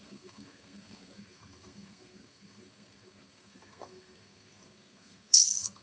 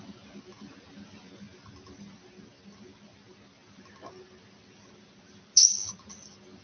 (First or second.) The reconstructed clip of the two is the first